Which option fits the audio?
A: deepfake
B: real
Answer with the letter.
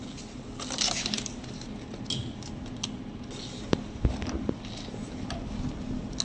B